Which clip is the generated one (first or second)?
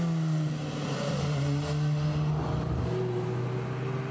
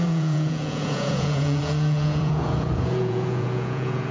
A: second